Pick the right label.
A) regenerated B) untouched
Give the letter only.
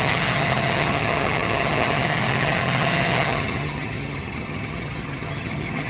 A